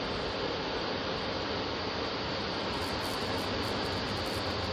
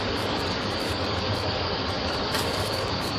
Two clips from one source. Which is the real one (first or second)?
first